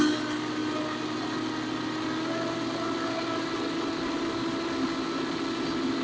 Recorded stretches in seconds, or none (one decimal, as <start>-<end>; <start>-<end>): 0.0-6.0